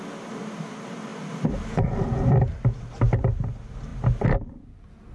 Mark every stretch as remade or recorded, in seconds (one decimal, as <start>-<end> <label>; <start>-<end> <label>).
0.0-5.1 recorded